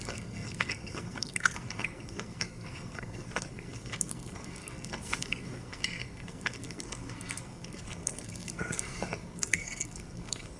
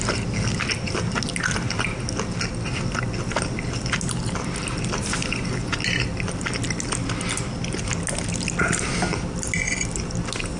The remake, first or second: first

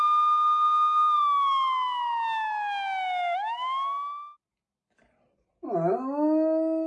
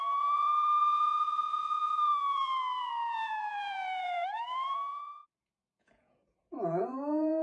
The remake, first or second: second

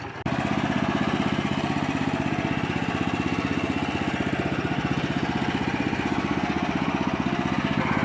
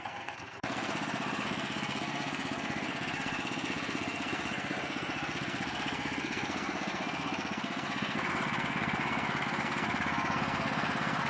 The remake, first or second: second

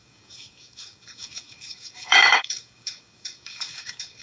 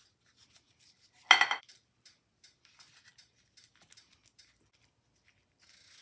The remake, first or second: first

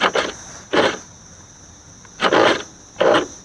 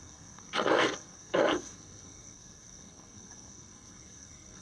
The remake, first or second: second